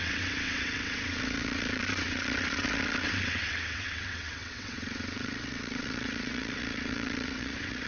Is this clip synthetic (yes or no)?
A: yes